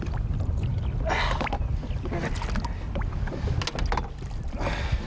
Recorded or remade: recorded